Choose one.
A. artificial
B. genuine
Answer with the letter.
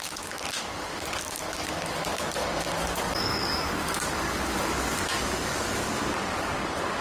A